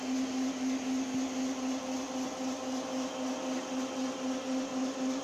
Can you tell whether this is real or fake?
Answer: real